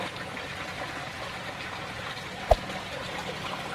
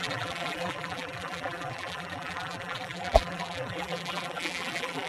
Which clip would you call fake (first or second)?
second